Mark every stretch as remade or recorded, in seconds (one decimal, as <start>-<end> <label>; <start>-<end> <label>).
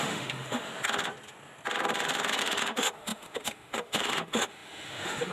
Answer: 0.0-0.7 remade; 0.7-2.4 recorded; 2.4-5.3 remade